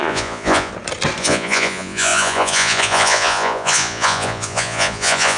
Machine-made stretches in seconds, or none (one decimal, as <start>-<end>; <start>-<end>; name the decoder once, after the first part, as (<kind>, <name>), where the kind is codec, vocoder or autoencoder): 0.0-0.7 (vocoder, Vocos); 1.2-5.4